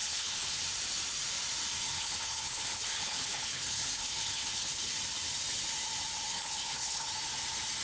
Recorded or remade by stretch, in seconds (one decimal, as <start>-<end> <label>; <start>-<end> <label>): 0.0-0.6 remade; 0.6-1.9 recorded; 1.9-4.9 remade; 4.9-6.3 recorded; 6.3-7.1 remade; 7.1-7.8 recorded